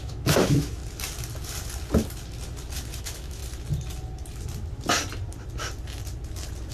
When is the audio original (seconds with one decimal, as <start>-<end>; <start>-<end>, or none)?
0.8-3.0; 3.4-6.7